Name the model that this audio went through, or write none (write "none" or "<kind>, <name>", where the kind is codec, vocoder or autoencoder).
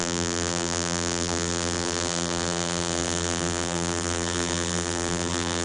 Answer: vocoder, BigVGAN v2